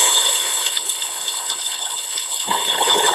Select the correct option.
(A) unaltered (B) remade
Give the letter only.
B